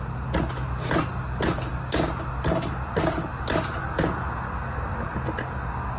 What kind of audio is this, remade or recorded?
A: recorded